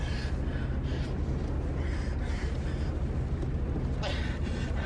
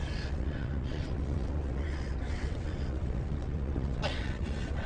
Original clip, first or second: first